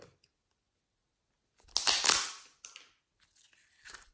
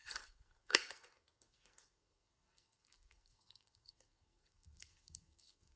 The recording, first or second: first